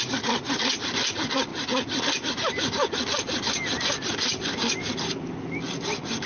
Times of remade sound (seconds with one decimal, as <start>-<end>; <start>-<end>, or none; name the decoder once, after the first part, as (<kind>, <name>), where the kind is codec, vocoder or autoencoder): none